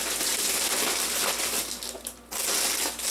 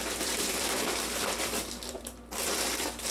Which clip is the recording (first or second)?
first